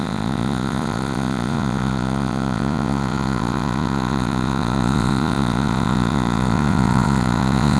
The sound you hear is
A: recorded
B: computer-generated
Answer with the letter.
B